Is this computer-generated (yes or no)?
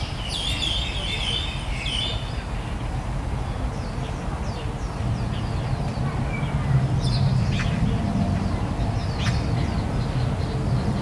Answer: no